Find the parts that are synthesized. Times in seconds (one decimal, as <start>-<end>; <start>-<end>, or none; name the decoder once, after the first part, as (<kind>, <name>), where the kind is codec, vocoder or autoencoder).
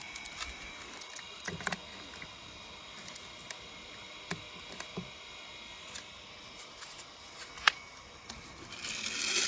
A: 1.9-4.6 (vocoder, BigVGAN v2)